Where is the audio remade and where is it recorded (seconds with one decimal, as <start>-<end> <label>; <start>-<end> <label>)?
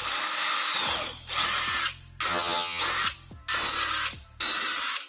0.0-2.3 recorded; 2.3-2.8 remade; 2.8-5.1 recorded